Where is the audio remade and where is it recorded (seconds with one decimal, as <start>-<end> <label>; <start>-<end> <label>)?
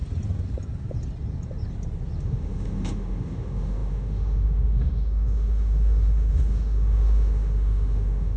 0.0-2.2 recorded; 2.2-8.4 remade